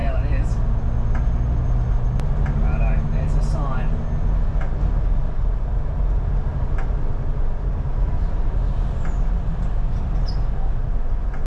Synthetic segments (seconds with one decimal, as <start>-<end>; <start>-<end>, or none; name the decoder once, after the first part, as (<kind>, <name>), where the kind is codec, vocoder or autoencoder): none